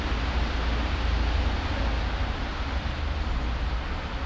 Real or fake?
real